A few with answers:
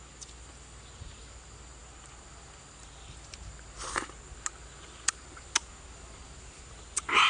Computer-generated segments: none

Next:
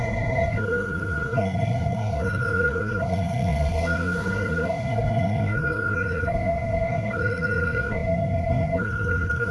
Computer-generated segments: 0.0-9.5 (codec, SNAC)

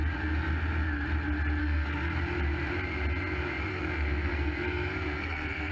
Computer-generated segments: 1.6-2.2 (codec, SNAC); 3.7-5.7

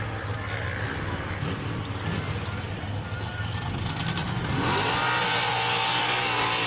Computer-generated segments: none

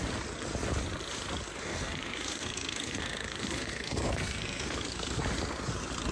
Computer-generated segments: 1.5-5.2 (codec, SNAC)

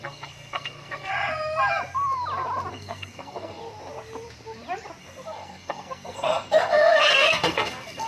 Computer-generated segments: 0.0-1.1 (codec, SNAC); 2.7-3.6; 5.0-8.1